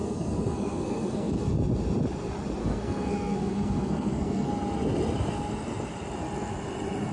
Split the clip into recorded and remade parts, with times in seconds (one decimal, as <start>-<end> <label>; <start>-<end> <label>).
0.0-1.5 remade; 1.5-2.6 recorded; 2.6-4.5 remade; 4.5-7.1 recorded